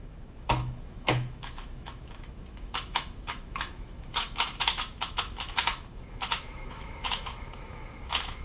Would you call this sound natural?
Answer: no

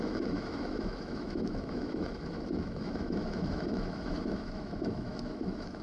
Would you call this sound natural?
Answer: no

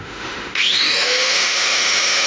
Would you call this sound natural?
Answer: no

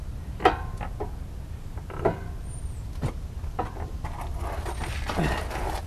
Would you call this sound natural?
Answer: yes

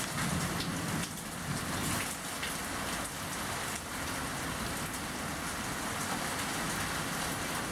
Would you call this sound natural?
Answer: yes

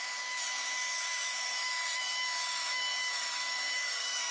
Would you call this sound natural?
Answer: no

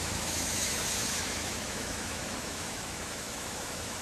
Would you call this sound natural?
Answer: no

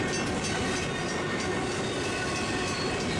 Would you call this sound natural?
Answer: yes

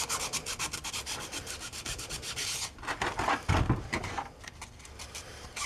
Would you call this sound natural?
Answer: yes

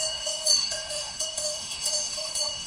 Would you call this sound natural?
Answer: no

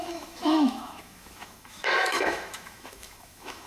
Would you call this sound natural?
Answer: no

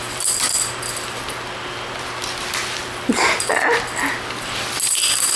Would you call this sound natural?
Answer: yes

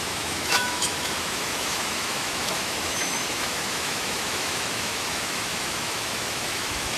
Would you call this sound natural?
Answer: no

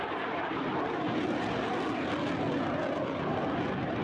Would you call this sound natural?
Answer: yes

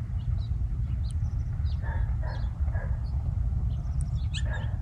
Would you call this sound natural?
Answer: yes